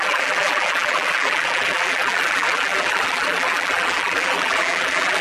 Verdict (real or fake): fake